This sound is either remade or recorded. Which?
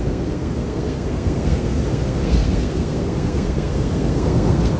remade